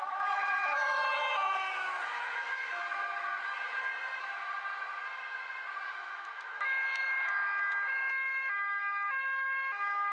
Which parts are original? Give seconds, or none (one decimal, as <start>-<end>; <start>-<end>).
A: 3.9-5.9